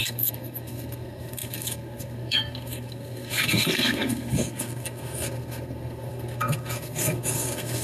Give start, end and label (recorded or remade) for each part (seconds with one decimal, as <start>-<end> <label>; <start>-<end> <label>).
0.0-7.8 remade